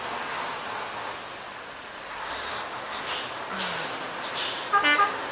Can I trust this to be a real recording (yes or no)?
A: yes